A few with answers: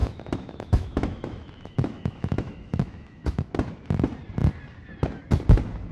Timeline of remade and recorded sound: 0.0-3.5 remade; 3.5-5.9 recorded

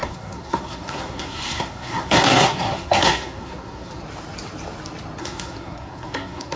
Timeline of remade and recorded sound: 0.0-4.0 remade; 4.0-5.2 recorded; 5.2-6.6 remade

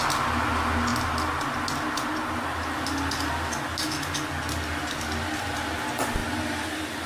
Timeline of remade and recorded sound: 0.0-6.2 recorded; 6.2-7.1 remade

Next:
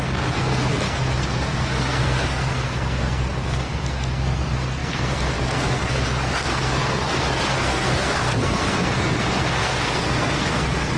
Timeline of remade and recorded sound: 0.0-11.0 remade

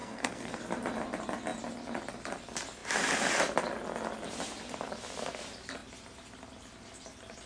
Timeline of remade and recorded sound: 0.0-0.6 remade; 0.6-7.5 recorded

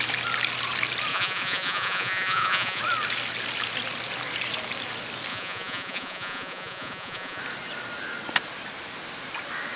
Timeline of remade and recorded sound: 0.0-1.1 recorded; 1.1-2.8 remade; 2.8-5.3 recorded; 5.3-7.4 remade; 7.4-9.8 recorded